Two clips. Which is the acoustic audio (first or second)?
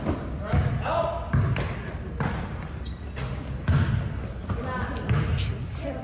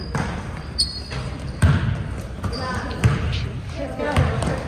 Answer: first